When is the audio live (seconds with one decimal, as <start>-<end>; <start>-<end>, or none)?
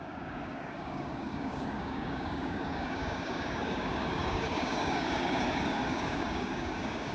none